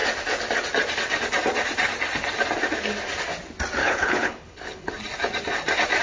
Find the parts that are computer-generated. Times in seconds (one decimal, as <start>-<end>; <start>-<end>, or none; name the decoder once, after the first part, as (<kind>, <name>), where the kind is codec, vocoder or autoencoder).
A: 3.8-4.9 (codec, HILCodec)